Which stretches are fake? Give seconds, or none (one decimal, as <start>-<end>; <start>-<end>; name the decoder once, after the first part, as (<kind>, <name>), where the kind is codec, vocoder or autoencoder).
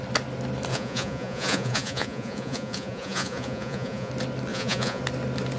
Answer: 0.7-4.1 (vocoder, Vocos); 4.5-5.0